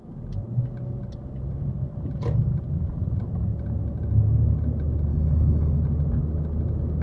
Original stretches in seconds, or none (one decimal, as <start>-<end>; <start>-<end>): 0.0-5.1; 5.8-7.0